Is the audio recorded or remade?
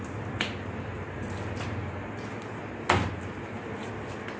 recorded